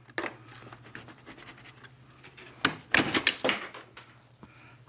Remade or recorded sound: recorded